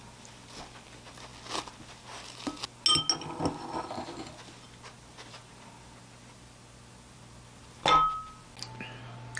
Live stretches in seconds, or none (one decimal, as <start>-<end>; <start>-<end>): 0.0-9.4

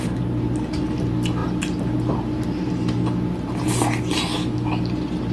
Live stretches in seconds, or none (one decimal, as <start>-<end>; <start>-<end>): 0.0-4.3; 4.8-5.3